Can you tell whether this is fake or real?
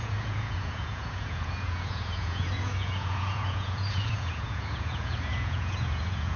fake